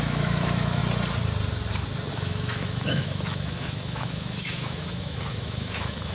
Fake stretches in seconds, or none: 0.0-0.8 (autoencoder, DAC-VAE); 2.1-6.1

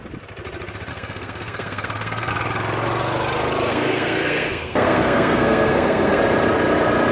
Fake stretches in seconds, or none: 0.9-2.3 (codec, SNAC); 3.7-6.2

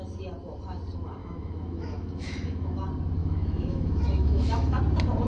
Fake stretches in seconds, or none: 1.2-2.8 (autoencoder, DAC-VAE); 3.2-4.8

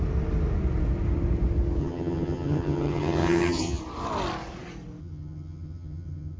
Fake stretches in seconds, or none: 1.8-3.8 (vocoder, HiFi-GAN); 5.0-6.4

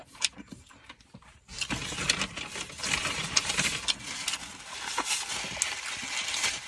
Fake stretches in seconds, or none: 0.0-1.2 (vocoder, BigVGAN v2); 3.0-3.5

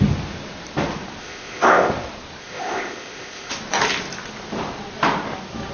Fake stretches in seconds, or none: 1.2-1.9 (codec, ZipCodec); 2.4-3.5

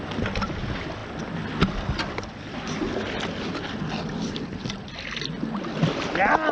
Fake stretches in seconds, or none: none